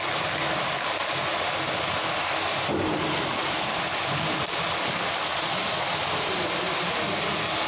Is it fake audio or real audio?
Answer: real